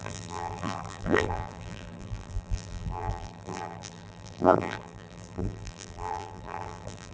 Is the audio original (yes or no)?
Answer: no